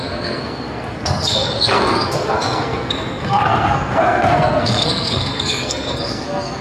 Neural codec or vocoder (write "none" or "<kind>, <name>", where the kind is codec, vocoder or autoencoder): codec, SNAC